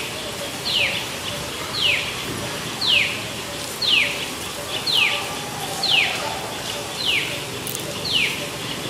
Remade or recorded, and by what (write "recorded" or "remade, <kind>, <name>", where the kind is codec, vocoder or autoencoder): recorded